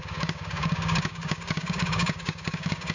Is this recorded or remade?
remade